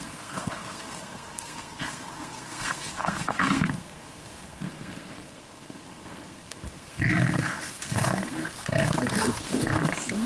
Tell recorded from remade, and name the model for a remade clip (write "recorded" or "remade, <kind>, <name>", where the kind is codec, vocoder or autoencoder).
remade, codec, SNAC